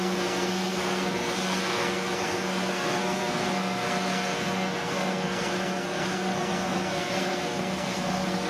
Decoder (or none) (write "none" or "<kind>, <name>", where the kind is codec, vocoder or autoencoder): codec, SNAC